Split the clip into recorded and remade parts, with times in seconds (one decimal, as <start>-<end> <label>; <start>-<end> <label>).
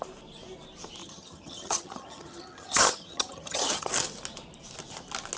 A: 0.0-1.0 recorded; 1.0-3.9 remade; 3.9-5.4 recorded